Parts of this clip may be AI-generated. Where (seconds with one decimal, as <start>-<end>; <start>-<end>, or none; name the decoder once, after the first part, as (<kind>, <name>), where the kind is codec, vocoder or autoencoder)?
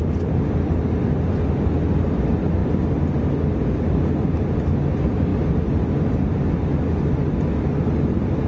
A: none